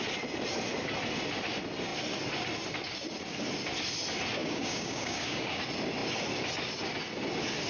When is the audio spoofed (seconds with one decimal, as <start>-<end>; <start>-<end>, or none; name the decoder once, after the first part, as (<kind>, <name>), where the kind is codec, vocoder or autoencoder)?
4.4-5.6 (codec, DAC)